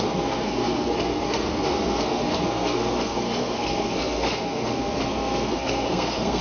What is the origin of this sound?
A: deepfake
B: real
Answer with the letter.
A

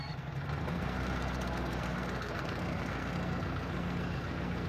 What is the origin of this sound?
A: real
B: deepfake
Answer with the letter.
B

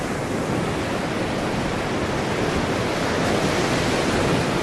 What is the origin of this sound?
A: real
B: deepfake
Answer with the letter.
A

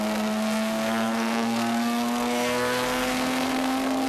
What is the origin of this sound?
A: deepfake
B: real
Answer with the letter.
A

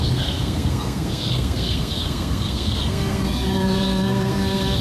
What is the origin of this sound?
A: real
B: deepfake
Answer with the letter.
B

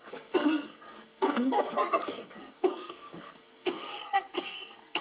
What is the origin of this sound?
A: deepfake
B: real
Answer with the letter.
A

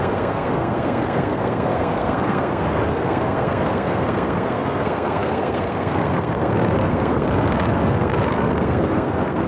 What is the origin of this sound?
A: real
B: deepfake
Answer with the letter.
B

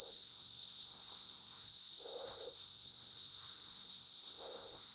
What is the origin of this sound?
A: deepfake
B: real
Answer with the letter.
A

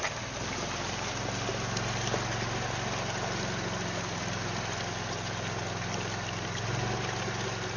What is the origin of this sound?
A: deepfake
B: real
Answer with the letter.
B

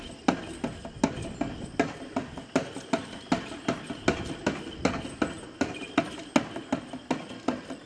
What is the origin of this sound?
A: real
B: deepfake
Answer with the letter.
A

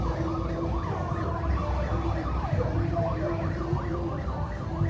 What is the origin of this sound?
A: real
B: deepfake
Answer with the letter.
A